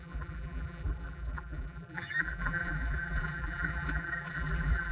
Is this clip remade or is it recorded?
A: remade